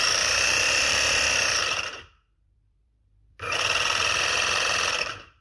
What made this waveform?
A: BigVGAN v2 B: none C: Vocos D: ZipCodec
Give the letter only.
A